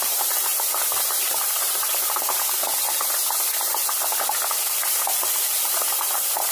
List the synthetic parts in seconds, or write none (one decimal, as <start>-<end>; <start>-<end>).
0.0-0.5; 1.0-2.7; 4.8-6.5